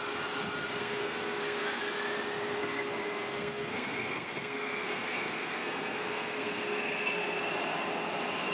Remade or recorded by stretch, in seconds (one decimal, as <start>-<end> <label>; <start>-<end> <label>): 0.0-0.8 recorded; 0.8-1.8 remade; 1.8-2.6 recorded; 2.6-7.4 remade; 7.4-8.5 recorded